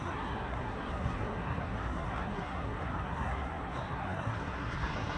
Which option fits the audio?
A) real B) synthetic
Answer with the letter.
B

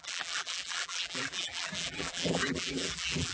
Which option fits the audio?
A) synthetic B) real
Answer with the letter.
A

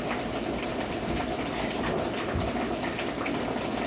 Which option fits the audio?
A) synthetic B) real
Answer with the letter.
B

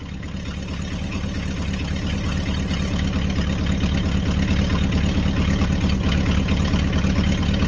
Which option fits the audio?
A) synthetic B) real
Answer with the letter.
B